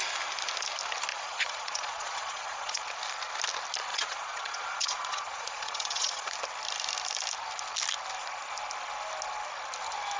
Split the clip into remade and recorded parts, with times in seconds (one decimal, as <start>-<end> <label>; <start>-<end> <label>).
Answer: 0.0-1.1 recorded; 1.1-2.8 remade; 2.8-3.9 recorded; 3.9-6.3 remade; 6.3-10.2 recorded

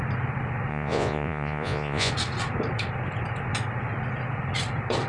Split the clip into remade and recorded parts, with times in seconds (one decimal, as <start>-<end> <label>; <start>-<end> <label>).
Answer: 0.0-0.7 recorded; 0.7-2.1 remade; 2.1-5.1 recorded

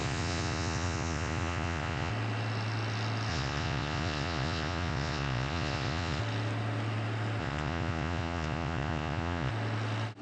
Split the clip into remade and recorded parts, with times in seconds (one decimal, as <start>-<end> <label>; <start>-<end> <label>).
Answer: 0.0-2.1 remade; 2.1-3.3 recorded; 3.3-6.2 remade; 6.2-7.4 recorded; 7.4-9.5 remade; 9.5-10.2 recorded

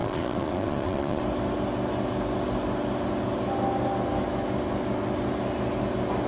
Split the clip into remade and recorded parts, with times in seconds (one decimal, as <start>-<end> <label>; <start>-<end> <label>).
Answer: 0.0-1.2 remade; 1.2-6.3 recorded

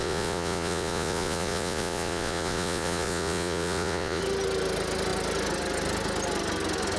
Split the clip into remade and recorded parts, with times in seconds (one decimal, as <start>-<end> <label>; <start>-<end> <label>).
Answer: 0.0-4.2 remade; 4.2-7.0 recorded

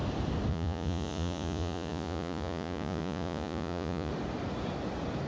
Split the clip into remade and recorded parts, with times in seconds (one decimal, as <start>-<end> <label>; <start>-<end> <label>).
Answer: 0.0-0.5 recorded; 0.5-4.1 remade; 4.1-5.3 recorded

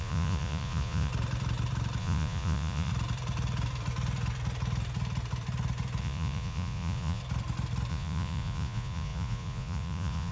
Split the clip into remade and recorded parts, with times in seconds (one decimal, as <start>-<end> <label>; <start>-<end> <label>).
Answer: 0.0-1.1 remade; 1.1-2.0 recorded; 2.0-2.9 remade; 2.9-6.0 recorded; 6.0-7.2 remade; 7.2-7.9 recorded; 7.9-10.3 remade

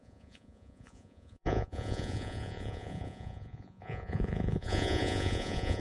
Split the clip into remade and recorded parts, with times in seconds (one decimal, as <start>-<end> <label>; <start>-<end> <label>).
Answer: 0.0-5.8 remade